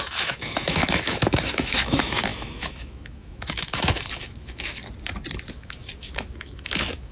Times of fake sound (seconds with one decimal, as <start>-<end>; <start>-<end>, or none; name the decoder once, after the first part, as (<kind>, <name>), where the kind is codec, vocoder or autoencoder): 0.0-4.8 (autoencoder, DAC-VAE); 5.5-7.1